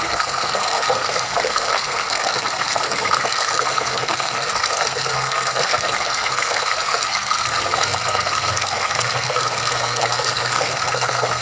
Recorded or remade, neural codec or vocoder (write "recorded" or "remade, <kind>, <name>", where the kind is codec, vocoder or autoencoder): remade, codec, SNAC